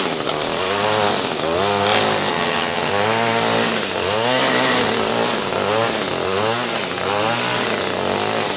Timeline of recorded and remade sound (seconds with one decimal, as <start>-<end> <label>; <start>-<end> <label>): 0.0-2.3 recorded; 2.3-2.9 remade; 2.9-8.6 recorded